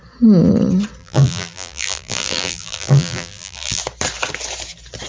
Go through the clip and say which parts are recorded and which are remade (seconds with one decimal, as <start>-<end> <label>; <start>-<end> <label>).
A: 0.0-1.0 recorded; 1.0-3.8 remade; 3.8-5.1 recorded